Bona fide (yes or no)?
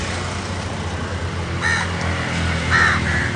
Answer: yes